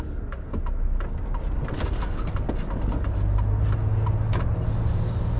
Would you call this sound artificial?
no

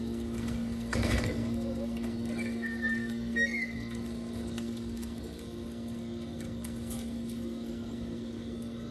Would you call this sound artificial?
yes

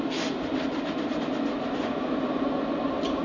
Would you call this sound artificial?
no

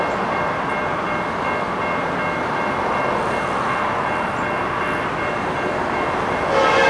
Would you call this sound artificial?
no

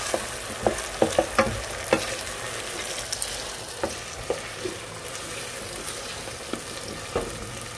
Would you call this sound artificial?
no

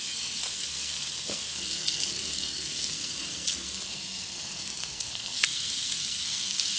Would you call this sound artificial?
yes